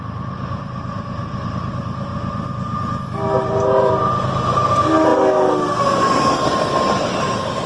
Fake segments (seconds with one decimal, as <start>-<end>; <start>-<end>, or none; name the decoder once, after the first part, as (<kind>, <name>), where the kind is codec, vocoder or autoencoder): 0.0-5.1 (vocoder, BigVGAN v2)